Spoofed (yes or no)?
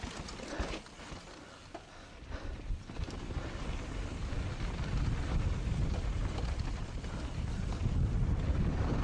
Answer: no